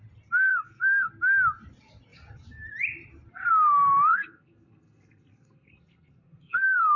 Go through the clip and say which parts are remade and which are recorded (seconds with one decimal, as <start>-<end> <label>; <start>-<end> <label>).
0.0-0.5 recorded; 0.5-1.1 remade; 1.1-4.1 recorded; 4.1-7.0 remade